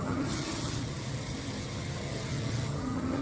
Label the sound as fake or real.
fake